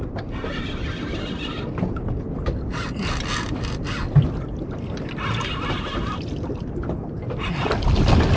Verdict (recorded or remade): recorded